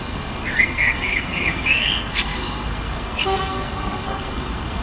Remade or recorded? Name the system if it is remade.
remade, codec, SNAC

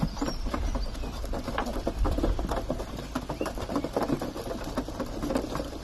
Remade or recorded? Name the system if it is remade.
recorded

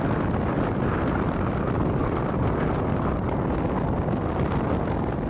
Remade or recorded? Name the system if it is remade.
recorded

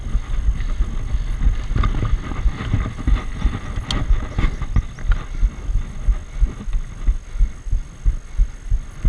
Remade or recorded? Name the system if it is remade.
recorded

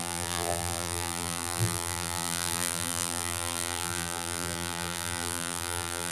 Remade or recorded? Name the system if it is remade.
remade, vocoder, BigVGAN v2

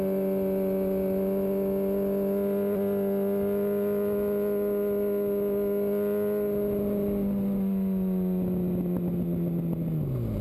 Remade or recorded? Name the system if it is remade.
recorded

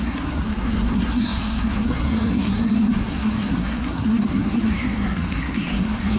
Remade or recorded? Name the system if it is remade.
remade, codec, SNAC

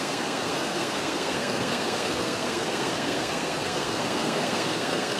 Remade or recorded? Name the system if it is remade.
remade, codec, SNAC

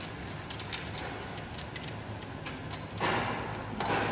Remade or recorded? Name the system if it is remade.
recorded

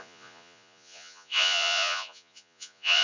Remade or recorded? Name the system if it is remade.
remade, vocoder, Vocos